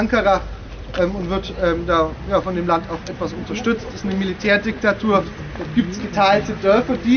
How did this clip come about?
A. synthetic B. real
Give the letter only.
B